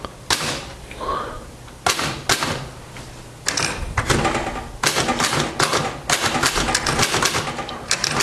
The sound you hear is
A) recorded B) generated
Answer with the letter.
A